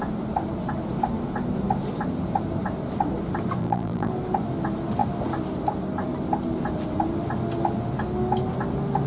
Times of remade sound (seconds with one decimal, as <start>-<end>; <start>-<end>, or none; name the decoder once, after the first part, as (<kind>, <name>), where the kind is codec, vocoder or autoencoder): 3.6-4.1 (vocoder, BigVGAN v2)